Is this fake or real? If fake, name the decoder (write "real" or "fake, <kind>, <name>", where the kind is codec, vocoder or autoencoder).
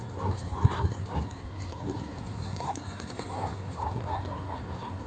fake, codec, SNAC